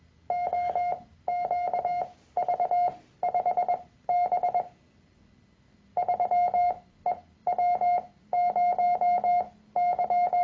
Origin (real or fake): real